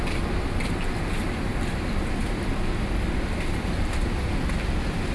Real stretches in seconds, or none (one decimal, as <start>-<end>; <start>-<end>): 0.0-5.1